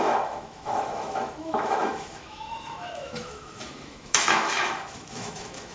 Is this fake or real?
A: fake